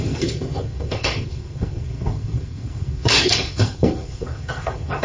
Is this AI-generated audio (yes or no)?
yes